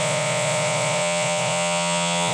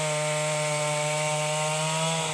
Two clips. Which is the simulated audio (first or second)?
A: first